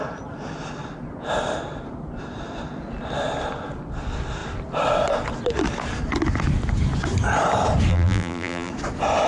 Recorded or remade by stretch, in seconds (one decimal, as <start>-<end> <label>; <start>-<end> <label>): 0.0-7.9 recorded; 7.9-8.7 remade; 8.7-9.3 recorded